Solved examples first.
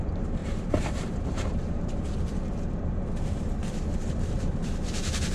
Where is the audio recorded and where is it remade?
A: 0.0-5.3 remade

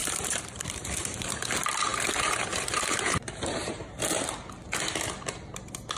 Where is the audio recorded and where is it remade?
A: 0.0-1.5 remade; 1.5-1.9 recorded; 1.9-4.2 remade; 4.2-6.0 recorded

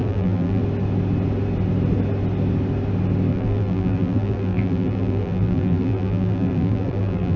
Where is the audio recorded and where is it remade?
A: 0.0-0.6 remade; 0.6-3.3 recorded; 3.3-7.4 remade

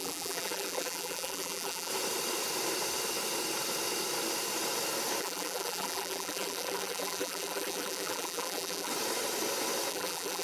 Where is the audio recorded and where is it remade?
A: 0.0-1.9 remade; 1.9-5.2 recorded; 5.2-8.9 remade; 8.9-9.9 recorded; 9.9-10.4 remade

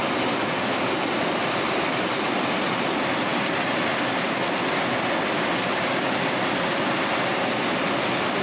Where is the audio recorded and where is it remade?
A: 0.0-8.4 recorded

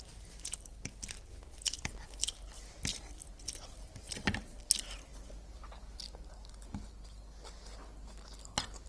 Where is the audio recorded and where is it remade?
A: 0.0-2.9 recorded; 2.9-4.6 remade; 4.6-8.9 recorded